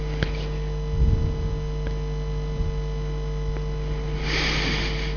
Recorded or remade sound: recorded